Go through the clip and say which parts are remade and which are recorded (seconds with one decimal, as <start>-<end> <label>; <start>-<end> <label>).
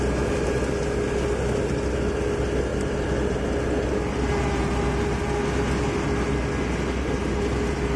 0.0-8.0 recorded